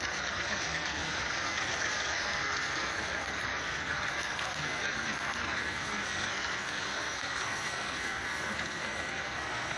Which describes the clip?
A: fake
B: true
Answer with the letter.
A